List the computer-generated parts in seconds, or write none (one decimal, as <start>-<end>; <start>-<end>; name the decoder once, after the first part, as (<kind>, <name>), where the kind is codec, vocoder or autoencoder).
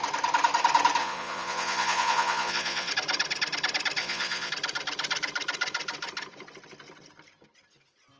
1.0-2.9 (vocoder, Vocos); 4.0-4.5